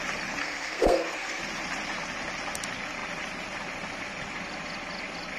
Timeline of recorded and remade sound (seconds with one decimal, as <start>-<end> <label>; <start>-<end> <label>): 0.0-0.4 recorded; 0.4-1.4 remade; 1.4-5.4 recorded